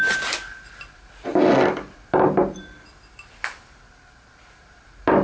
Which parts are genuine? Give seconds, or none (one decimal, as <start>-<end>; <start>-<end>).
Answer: 0.0-5.2